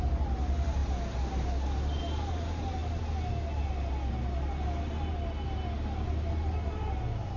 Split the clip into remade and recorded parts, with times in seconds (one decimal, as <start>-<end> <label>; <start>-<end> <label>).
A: 0.0-7.4 recorded